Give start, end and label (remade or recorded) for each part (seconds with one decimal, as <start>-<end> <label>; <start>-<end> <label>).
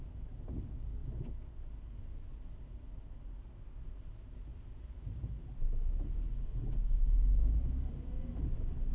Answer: 0.0-8.9 recorded